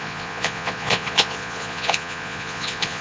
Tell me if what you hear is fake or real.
fake